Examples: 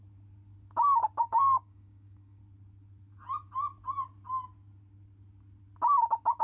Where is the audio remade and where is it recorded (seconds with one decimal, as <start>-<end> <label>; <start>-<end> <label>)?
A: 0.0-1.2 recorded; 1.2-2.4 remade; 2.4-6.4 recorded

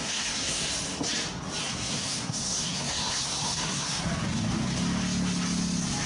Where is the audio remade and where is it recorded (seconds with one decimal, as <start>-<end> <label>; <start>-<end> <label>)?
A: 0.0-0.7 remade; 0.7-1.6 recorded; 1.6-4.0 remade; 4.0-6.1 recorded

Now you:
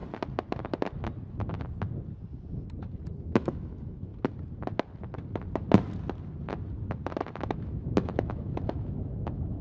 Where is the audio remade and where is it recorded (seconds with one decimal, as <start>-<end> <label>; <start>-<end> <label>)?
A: 0.0-3.2 recorded; 3.2-4.1 remade; 4.1-7.3 recorded; 7.3-9.6 remade